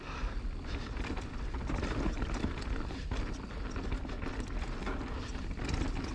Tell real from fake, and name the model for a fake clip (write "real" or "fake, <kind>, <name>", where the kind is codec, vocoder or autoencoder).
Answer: real